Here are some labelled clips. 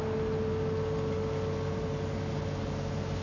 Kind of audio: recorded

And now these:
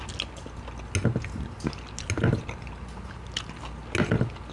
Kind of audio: recorded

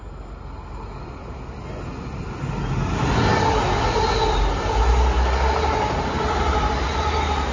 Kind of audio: recorded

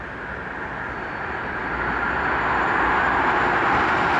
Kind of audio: recorded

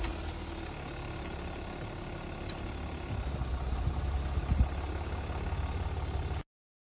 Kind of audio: recorded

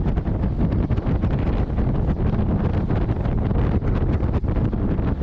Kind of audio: recorded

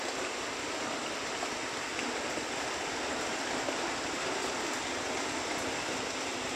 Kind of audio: recorded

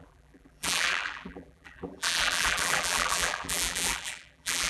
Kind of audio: remade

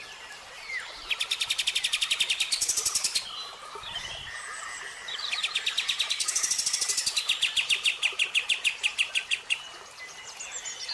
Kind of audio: recorded